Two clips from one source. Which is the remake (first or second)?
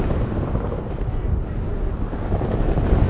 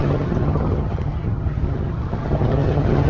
second